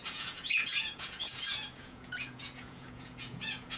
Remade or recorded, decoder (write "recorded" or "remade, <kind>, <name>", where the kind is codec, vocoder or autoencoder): remade, vocoder, Vocos